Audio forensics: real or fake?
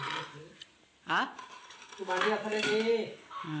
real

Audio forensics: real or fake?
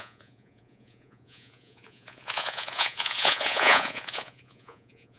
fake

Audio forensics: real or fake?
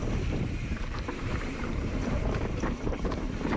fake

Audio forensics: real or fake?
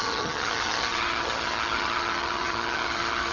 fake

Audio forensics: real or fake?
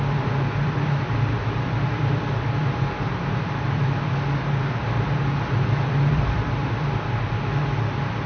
fake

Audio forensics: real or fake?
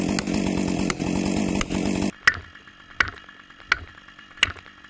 real